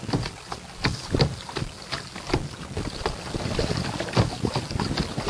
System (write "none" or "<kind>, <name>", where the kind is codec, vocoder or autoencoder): none